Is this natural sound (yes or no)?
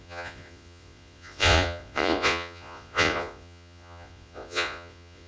no